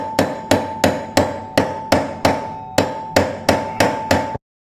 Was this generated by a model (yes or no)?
no